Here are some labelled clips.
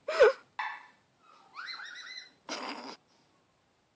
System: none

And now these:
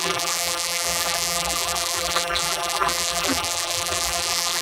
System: vocoder, BigVGAN v2